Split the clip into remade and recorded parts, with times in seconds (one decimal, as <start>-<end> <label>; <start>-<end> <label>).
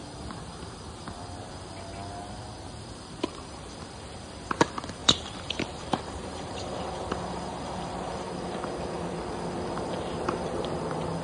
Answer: 0.0-5.0 recorded; 5.0-8.2 remade; 8.2-11.2 recorded